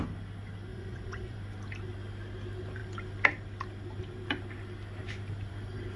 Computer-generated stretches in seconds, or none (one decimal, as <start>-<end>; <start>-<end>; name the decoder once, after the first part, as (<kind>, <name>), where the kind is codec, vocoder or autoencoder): 0.7-1.4 (vocoder, Vocos)